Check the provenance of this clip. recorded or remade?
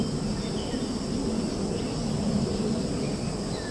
recorded